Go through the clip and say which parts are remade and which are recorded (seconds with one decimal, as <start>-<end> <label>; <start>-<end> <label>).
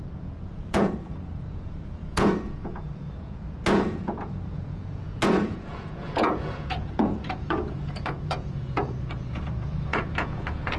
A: 0.0-10.8 remade